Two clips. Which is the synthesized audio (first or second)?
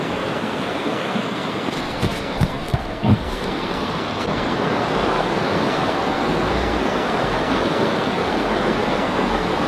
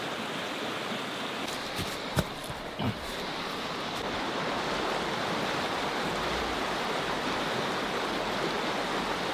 first